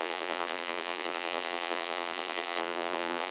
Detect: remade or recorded remade